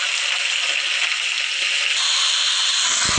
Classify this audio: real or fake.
real